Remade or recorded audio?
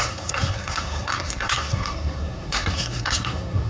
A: remade